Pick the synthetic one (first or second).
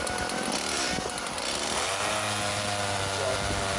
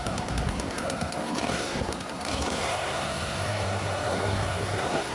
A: second